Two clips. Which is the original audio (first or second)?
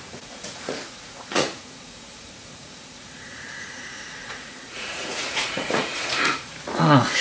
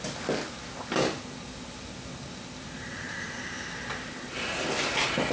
second